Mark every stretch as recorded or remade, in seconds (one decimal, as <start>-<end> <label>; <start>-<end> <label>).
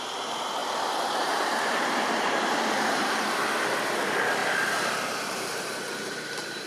0.0-0.6 recorded; 0.6-3.1 remade; 3.1-4.4 recorded; 4.4-6.7 remade